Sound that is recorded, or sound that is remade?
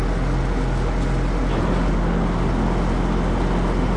recorded